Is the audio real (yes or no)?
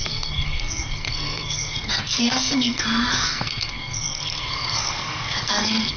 no